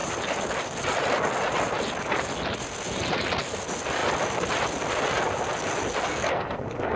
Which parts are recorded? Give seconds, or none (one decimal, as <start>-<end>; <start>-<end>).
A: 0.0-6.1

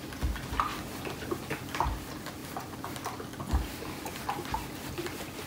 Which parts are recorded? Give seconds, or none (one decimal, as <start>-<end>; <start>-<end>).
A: 0.0-5.5

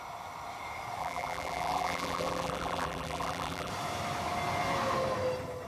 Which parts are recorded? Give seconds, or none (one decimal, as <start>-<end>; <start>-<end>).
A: 0.0-1.0; 3.7-5.7

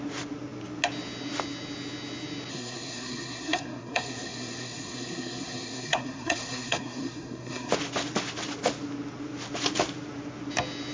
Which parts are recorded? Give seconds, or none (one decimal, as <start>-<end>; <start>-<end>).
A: 0.0-2.5; 7.7-10.9